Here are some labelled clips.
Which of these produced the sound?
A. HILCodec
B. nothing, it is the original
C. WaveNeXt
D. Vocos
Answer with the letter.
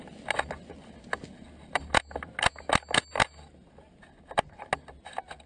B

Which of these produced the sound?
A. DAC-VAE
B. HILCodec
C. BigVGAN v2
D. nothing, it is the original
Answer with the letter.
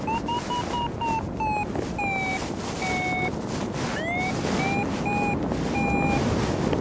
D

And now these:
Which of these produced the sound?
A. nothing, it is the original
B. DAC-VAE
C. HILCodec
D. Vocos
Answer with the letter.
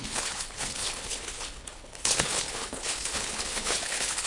C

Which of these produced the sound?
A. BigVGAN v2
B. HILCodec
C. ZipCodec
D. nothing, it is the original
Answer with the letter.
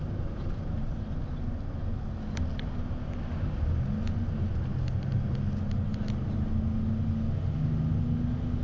D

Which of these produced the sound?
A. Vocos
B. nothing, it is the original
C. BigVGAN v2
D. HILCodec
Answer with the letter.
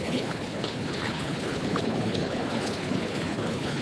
D